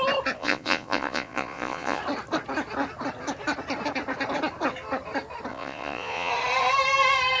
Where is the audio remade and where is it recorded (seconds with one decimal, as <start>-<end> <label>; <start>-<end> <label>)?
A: 0.0-0.4 recorded; 0.4-2.0 remade; 2.0-5.5 recorded; 5.5-6.3 remade; 6.3-7.4 recorded